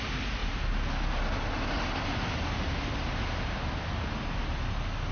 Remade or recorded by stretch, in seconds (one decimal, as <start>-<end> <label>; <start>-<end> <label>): 0.0-5.1 recorded